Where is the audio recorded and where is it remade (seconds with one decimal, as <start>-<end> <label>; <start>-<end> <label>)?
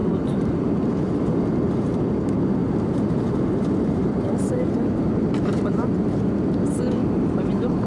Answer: 0.0-0.8 remade; 0.8-2.6 recorded; 2.6-6.2 remade; 6.2-7.0 recorded; 7.0-7.9 remade